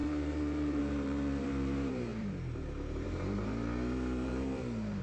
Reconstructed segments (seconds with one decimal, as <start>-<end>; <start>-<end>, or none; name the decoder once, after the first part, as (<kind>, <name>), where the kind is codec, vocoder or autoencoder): 0.0-5.0 (vocoder, BigVGAN v2)